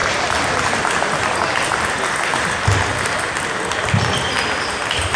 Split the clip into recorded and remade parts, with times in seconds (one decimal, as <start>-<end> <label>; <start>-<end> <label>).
0.0-5.2 recorded

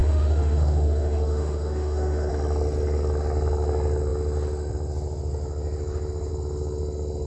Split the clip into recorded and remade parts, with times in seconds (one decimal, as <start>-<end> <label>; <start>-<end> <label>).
0.0-2.3 remade; 2.3-7.3 recorded